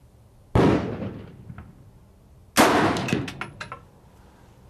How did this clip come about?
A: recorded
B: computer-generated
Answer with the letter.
A